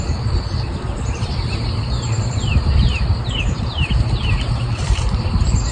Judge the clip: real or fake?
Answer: fake